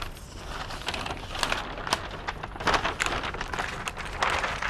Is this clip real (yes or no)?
yes